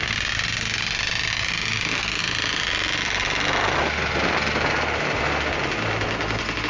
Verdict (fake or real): real